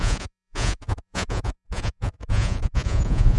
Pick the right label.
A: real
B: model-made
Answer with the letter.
B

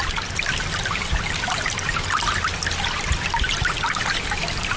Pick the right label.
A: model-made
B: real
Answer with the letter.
B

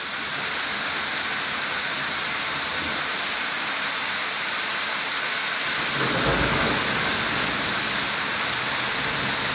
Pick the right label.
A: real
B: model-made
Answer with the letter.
A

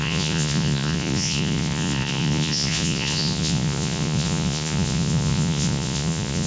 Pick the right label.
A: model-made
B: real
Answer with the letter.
A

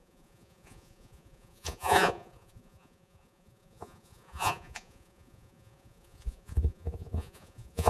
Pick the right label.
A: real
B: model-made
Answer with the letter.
B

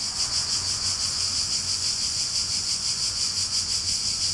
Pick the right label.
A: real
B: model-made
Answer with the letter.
B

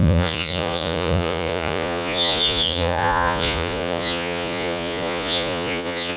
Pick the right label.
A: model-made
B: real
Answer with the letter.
A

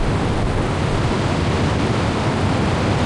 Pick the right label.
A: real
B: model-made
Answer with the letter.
A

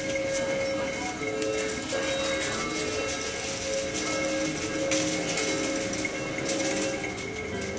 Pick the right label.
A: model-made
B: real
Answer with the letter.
B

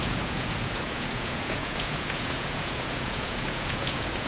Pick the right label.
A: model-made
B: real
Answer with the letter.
A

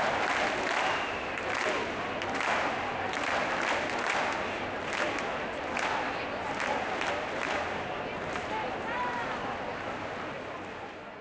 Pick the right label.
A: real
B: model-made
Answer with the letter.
A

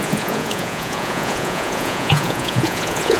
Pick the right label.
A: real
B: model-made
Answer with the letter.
B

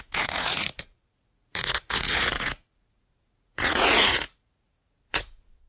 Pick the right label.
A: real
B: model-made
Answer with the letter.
B